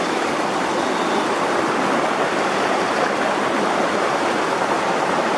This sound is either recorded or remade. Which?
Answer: recorded